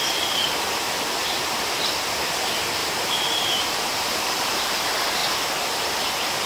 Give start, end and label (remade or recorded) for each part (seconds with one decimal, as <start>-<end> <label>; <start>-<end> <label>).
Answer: 0.0-1.2 recorded; 1.2-1.9 remade; 1.9-2.8 recorded; 2.8-4.6 remade; 4.6-6.5 recorded